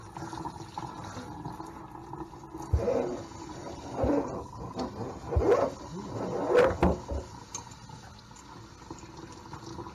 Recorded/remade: recorded